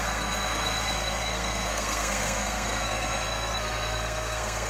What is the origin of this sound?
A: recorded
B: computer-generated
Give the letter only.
B